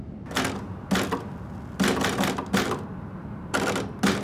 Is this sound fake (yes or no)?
no